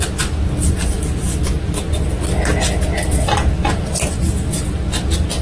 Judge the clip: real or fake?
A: real